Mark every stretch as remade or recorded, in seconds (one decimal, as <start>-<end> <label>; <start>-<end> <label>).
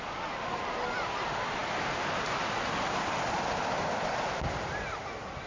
0.0-5.5 recorded